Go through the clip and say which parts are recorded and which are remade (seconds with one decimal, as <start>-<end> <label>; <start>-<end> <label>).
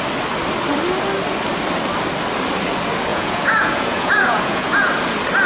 0.0-3.1 recorded; 3.1-4.9 remade; 4.9-5.5 recorded